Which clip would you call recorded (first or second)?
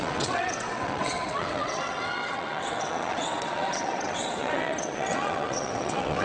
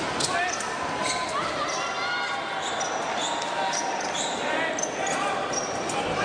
second